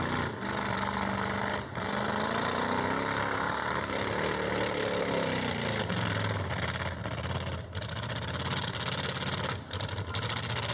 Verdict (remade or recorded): recorded